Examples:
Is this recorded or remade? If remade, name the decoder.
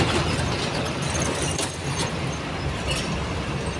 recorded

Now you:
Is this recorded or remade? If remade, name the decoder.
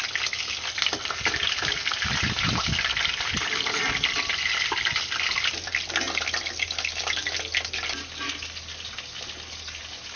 recorded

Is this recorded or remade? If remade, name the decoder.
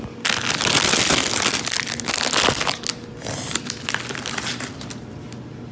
recorded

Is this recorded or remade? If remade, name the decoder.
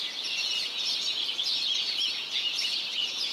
remade, vocoder, Vocos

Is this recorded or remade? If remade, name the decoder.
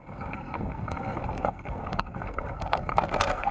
remade, codec, SNAC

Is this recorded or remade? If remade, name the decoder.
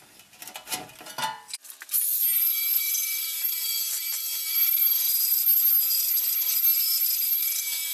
recorded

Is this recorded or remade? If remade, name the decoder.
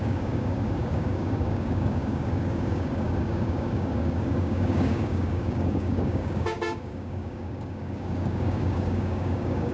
remade, codec, DAC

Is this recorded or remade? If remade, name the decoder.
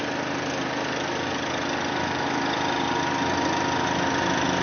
recorded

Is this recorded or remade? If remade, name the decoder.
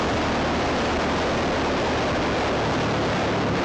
recorded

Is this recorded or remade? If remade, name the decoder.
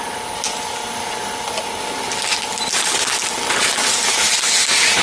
recorded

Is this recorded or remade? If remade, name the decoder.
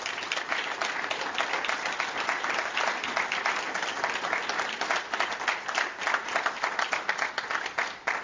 recorded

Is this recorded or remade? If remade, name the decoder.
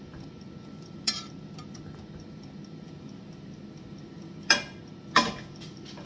recorded